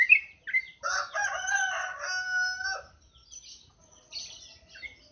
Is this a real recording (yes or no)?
yes